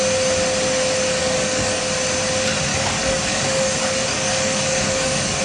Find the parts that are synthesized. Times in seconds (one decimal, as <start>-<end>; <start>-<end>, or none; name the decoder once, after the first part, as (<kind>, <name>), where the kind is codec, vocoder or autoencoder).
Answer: 1.2-1.8 (codec, DAC); 2.7-5.4